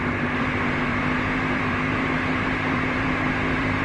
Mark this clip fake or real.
fake